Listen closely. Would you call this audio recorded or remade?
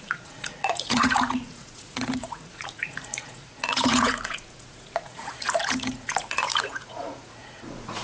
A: remade